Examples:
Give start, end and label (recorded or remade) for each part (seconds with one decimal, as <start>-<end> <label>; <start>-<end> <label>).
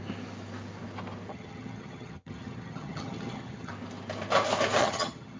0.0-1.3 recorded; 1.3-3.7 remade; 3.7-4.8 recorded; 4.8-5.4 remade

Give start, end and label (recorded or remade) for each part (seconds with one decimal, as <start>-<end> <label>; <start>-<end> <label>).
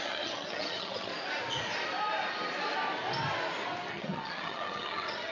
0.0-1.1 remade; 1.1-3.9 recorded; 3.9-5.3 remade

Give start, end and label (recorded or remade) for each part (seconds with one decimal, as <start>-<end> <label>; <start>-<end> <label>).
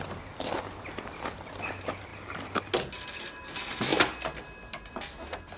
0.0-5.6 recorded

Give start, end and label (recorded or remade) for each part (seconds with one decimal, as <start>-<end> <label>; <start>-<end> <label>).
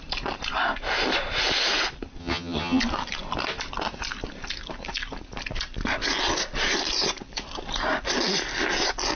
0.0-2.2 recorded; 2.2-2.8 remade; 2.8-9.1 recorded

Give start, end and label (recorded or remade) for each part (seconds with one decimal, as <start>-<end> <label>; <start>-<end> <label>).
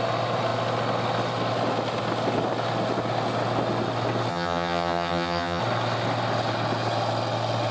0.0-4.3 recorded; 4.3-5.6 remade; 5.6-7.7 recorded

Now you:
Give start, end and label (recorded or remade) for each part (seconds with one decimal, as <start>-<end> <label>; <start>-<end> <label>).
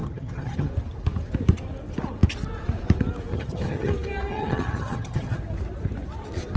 0.0-0.7 remade; 0.7-3.3 recorded; 3.3-3.9 remade; 3.9-4.3 recorded; 4.3-5.4 remade; 5.4-6.6 recorded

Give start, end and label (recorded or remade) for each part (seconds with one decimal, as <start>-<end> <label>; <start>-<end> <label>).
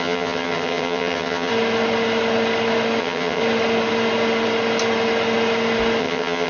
0.0-1.5 remade; 1.5-3.0 recorded; 3.0-3.4 remade; 3.4-6.0 recorded; 6.0-6.5 remade